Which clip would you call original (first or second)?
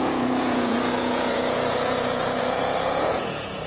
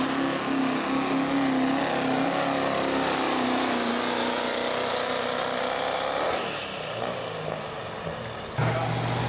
second